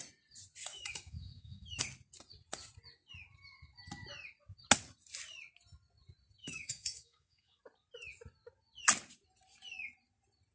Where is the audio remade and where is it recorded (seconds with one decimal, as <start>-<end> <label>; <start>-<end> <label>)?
0.0-0.6 recorded; 0.6-1.8 remade; 1.8-6.4 recorded; 6.4-7.6 remade; 7.6-10.5 recorded